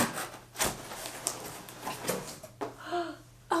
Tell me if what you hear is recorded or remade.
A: recorded